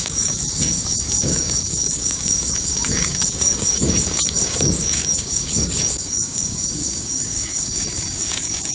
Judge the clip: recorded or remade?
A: remade